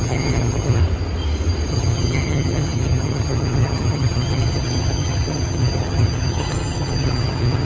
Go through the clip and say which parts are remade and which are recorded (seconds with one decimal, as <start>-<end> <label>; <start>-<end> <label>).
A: 0.0-0.8 remade; 0.8-1.7 recorded; 1.7-7.7 remade